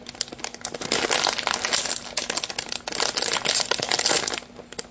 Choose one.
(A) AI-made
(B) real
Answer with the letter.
B